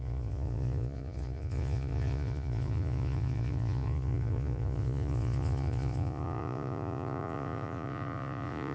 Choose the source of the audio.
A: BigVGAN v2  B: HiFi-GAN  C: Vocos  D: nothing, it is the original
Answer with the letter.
C